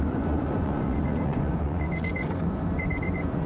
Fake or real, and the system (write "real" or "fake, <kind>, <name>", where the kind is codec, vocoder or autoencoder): fake, vocoder, Vocos